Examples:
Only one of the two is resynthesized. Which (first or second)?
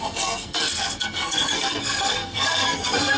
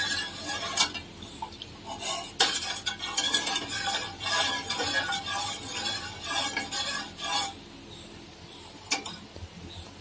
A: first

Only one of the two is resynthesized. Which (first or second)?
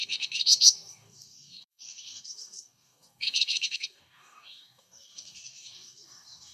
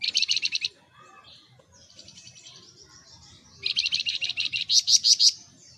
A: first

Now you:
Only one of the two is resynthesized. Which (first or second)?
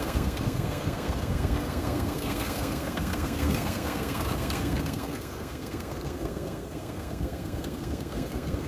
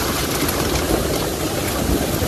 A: first